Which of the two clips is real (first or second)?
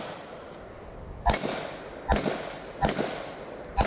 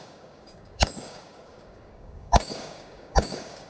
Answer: first